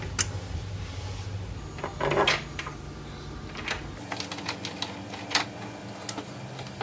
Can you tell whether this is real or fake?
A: real